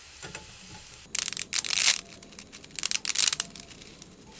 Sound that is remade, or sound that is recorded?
recorded